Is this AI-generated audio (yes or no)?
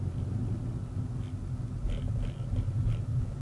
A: no